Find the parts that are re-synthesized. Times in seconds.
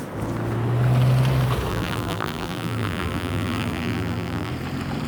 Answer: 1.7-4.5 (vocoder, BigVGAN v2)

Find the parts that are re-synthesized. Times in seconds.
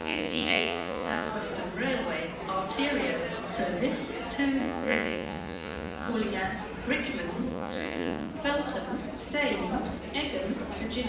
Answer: 0.0-1.3 (vocoder, Vocos); 4.6-6.1; 7.5-8.3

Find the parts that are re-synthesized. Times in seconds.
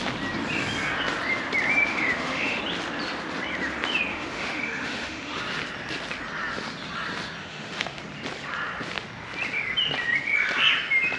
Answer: 1.9-2.6 (autoencoder, DAC-VAE); 4.1-5.4; 7.4-8.0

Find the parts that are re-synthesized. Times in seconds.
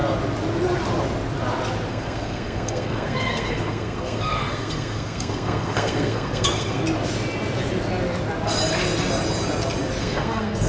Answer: 1.9-6.8 (codec, SNAC); 10.0-10.7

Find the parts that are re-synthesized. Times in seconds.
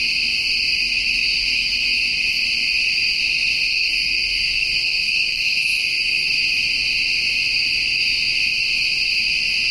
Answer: 1.4-2.0 (codec, SNAC); 3.7-6.3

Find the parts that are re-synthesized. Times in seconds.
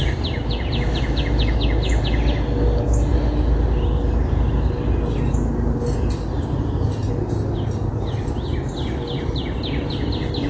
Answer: none